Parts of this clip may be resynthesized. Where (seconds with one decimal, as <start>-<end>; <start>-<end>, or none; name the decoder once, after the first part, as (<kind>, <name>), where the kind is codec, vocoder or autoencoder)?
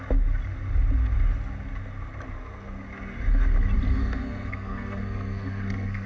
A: 4.0-6.1 (codec, SNAC)